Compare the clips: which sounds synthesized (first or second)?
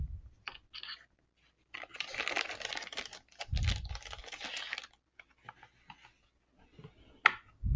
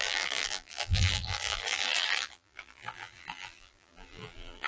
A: second